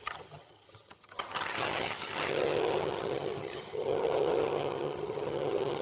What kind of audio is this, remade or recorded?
remade